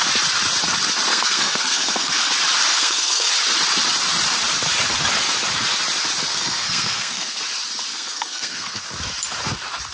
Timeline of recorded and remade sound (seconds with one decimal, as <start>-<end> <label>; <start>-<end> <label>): 0.0-1.1 recorded; 1.1-2.3 remade; 2.3-2.7 recorded; 2.7-3.3 remade; 3.3-6.3 recorded; 6.3-7.4 remade; 7.4-7.9 recorded; 7.9-8.8 remade; 8.8-9.9 recorded

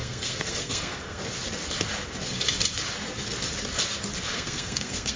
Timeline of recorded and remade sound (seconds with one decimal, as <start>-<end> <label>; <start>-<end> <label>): 0.0-1.2 remade; 1.2-4.3 recorded; 4.3-5.2 remade

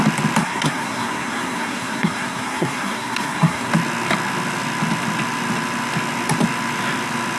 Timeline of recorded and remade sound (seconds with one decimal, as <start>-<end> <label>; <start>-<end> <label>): 0.0-0.4 recorded; 0.4-3.7 remade; 3.7-7.4 recorded

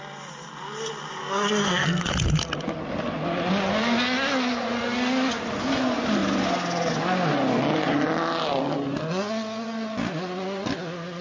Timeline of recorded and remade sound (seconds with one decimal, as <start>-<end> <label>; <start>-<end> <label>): 0.0-1.2 recorded; 1.2-2.0 remade; 2.0-11.2 recorded

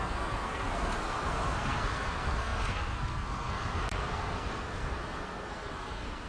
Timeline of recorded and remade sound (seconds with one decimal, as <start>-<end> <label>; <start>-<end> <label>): 0.0-6.3 remade

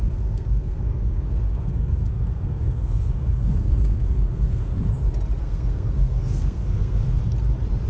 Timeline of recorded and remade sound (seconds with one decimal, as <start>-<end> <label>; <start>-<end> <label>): 0.0-4.7 remade; 4.7-5.4 recorded; 5.4-7.2 remade; 7.2-7.9 recorded

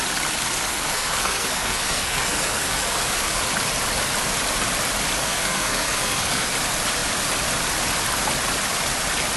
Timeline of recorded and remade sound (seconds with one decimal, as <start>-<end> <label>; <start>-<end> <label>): 0.0-0.7 recorded; 0.7-3.4 remade; 3.4-5.2 recorded; 5.2-6.5 remade; 6.5-9.4 recorded